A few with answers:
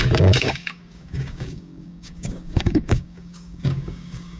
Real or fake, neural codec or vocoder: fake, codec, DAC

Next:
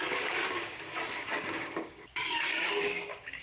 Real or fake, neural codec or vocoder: fake, codec, DAC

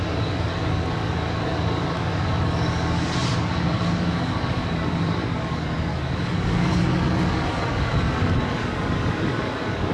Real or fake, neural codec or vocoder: fake, codec, DAC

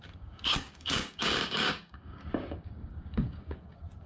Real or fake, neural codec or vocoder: fake, codec, DAC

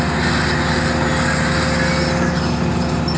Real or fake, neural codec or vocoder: real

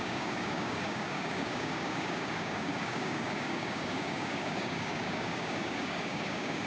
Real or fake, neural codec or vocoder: fake, codec, DAC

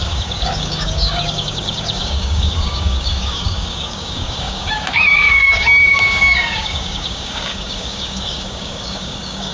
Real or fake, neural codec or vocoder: fake, codec, DAC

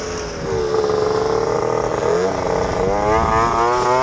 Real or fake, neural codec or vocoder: real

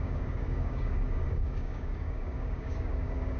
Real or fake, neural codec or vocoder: fake, codec, DAC